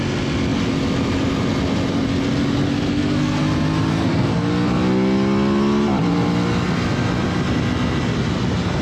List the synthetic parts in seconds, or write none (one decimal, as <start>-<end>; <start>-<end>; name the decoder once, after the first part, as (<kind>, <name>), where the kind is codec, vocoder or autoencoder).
2.9-3.4 (codec, SNAC); 3.9-4.5